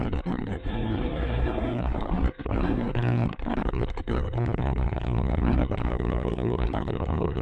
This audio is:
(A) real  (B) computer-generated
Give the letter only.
B